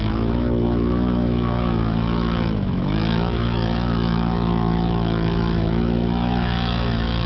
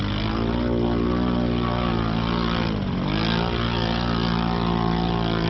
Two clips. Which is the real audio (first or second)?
second